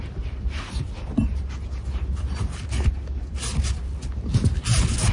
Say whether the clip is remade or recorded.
recorded